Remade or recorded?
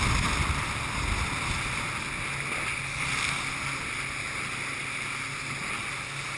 recorded